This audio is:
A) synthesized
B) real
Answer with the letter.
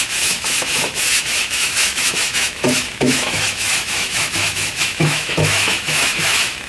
A